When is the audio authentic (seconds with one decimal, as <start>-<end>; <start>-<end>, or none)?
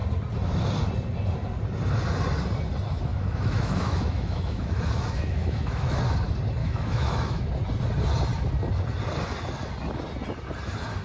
0.0-3.1; 6.0-6.6; 7.5-11.0